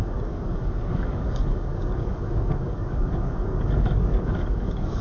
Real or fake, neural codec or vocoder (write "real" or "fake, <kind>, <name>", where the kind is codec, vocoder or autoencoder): fake, codec, DAC